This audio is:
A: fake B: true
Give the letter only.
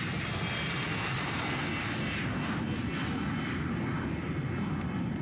A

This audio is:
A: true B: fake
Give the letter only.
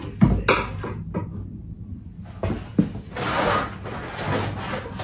A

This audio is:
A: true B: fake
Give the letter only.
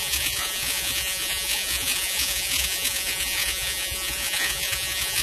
B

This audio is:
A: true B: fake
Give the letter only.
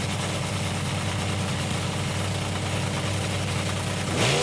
A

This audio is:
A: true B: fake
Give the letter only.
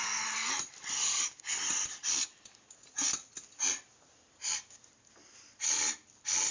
A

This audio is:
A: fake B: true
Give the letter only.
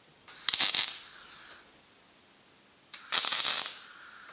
B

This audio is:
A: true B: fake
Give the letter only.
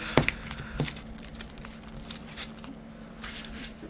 A